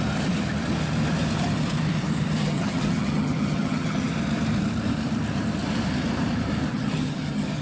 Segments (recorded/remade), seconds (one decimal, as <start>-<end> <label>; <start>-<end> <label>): 0.0-2.4 recorded; 2.4-4.1 remade; 4.1-6.7 recorded; 6.7-7.6 remade